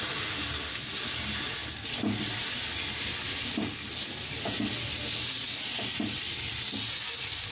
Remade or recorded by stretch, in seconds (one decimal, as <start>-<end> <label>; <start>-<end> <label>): 0.0-7.5 recorded